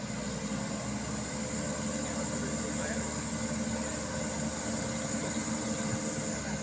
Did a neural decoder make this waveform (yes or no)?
no